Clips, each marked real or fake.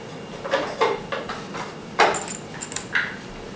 real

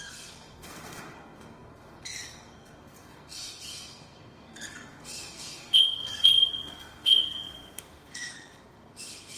fake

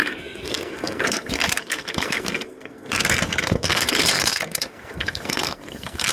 fake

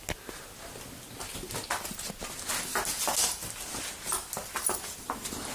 real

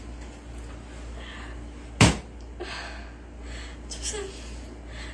real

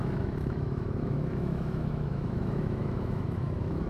fake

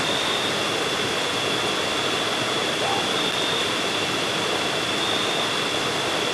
real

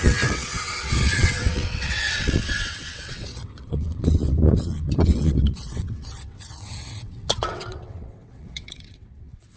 fake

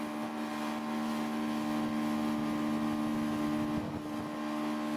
real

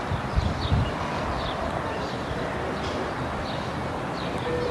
real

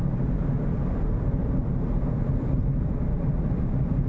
real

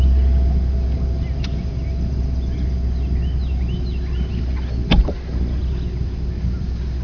real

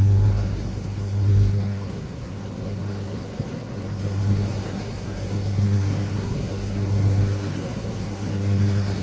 fake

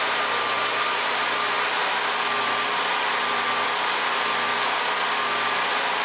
real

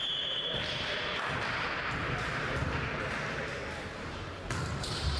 fake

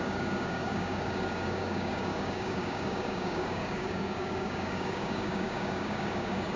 fake